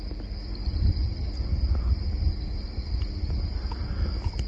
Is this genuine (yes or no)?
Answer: yes